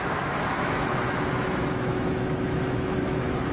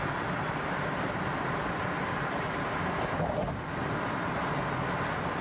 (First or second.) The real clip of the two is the second